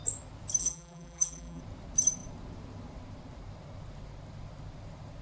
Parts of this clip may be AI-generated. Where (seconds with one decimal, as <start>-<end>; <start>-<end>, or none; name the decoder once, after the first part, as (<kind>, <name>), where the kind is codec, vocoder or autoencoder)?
0.6-1.6 (vocoder, BigVGAN v2)